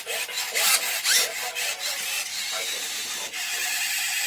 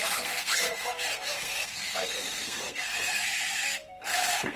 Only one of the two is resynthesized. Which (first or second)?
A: second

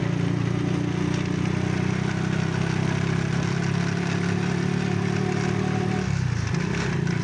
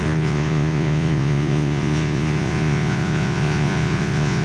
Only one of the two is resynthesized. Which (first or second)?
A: second